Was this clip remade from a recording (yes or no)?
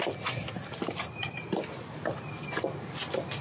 no